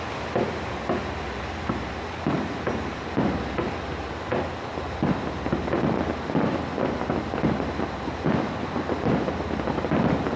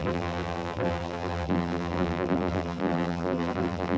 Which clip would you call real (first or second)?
first